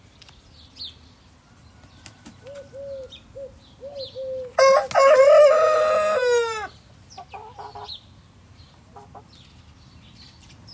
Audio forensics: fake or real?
real